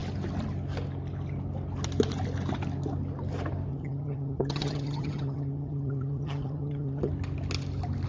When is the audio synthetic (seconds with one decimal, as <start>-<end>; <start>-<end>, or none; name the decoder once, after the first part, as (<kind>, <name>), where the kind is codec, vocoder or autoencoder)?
3.7-7.1 (vocoder, HiFi-GAN)